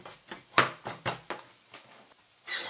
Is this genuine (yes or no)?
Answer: yes